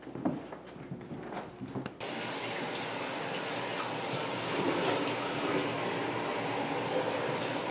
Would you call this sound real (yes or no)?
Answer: yes